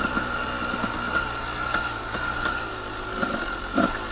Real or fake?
real